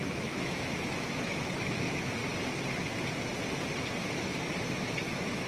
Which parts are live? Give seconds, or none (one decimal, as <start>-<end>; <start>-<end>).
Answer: 2.2-4.2